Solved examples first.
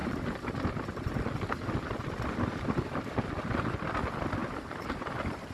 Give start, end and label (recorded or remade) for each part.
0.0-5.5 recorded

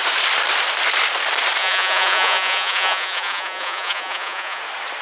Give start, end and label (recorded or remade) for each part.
0.0-1.6 recorded; 1.6-4.6 remade; 4.6-5.0 recorded

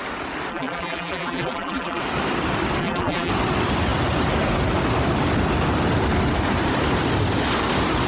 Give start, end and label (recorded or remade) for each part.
0.0-0.5 recorded; 0.5-2.0 remade; 2.0-2.8 recorded; 2.8-3.3 remade; 3.3-8.1 recorded